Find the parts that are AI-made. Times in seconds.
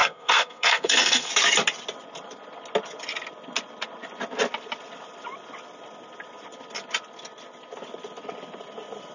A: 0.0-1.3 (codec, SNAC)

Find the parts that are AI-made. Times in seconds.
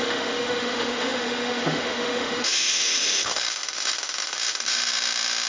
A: 0.0-5.5 (autoencoder, DAC-VAE)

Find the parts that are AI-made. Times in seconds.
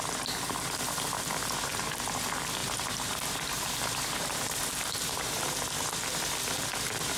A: 2.6-5.4 (vocoder, BigVGAN v2)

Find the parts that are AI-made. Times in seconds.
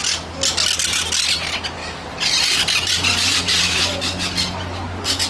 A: 1.8-3.8 (vocoder, BigVGAN v2)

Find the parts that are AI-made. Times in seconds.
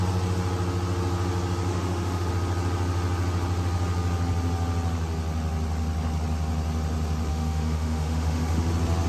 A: 1.7-2.3 (autoencoder, DAC-VAE); 7.3-8.7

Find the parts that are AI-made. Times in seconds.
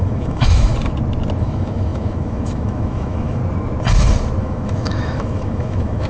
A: 0.0-0.7 (autoencoder, DAC-VAE); 1.4-3.4; 4.4-6.1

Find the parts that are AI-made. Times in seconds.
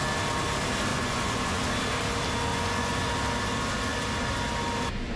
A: 0.9-1.6 (vocoder, Vocos); 2.5-3.1